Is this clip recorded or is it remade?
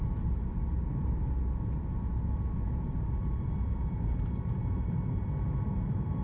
remade